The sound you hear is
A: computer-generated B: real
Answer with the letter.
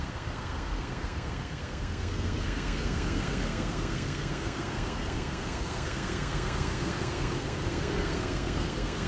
A